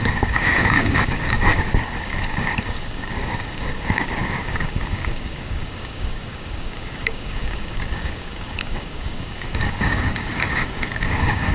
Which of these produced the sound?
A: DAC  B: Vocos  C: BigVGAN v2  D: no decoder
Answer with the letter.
A